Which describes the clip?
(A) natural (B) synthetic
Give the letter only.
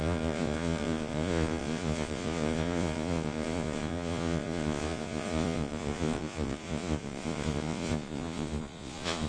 B